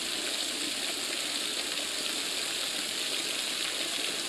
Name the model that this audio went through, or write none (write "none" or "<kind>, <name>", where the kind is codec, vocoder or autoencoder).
none